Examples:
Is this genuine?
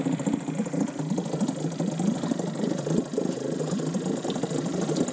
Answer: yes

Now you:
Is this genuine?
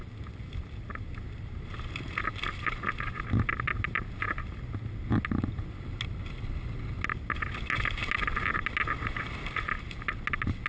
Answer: yes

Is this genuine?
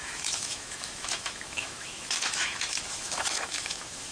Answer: no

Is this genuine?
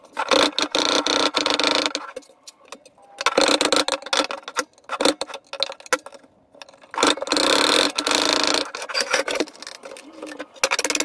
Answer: yes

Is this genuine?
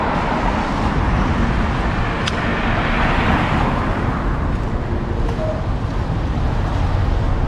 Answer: yes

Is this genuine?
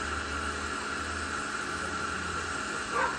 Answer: yes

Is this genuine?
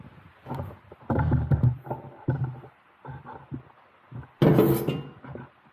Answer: yes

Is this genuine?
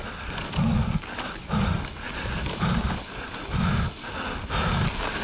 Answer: yes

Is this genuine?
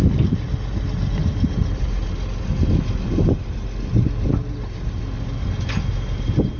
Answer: yes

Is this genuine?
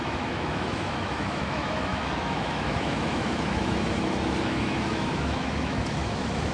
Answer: no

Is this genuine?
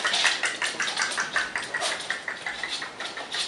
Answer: yes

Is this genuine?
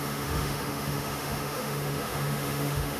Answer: no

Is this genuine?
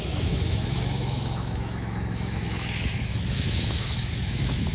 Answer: no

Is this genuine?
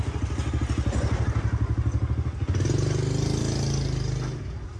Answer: yes